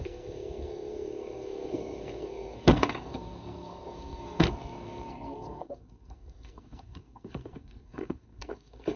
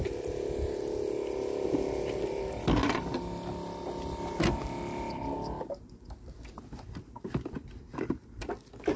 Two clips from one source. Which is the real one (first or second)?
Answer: second